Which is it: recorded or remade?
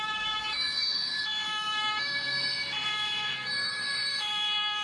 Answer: remade